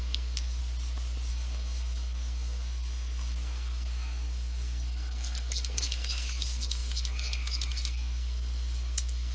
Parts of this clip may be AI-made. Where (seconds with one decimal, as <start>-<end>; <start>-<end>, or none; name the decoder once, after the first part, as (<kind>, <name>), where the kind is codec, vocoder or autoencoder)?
0.0-0.6 (codec, SNAC); 1.3-9.3